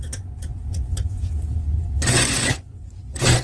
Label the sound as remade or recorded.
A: remade